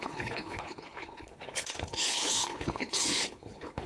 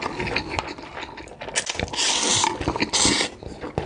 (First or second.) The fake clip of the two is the first